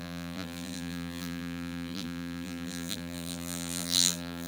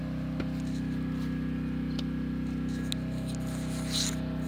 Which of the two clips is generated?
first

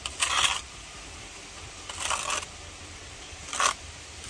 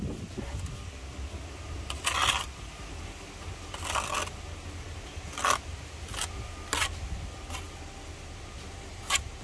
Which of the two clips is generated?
first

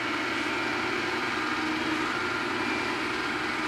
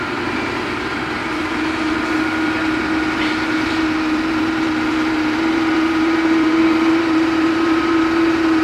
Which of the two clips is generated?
second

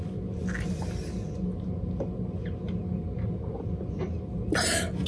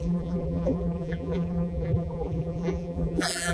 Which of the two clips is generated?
second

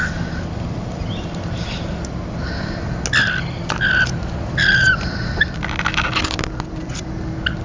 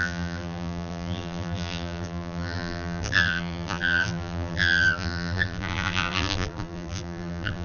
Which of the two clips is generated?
second